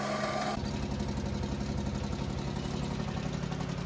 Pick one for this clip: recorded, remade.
recorded